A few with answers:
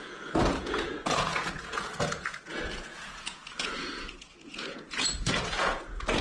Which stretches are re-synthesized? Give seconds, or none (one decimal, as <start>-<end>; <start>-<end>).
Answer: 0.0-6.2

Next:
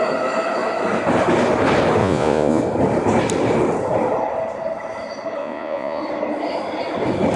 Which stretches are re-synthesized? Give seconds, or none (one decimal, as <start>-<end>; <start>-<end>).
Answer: 2.0-2.6; 5.4-6.0

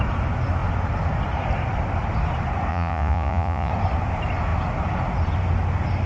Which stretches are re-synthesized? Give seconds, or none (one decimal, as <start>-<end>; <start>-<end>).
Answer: 2.7-3.7

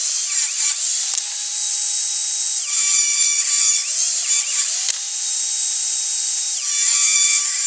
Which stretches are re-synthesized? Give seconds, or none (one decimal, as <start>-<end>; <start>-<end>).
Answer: none

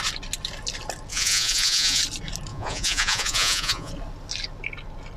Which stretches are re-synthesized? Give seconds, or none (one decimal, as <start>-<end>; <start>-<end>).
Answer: 1.1-2.0; 2.5-3.9

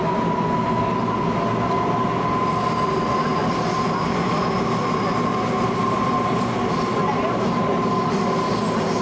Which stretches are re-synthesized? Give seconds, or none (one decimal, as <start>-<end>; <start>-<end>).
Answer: none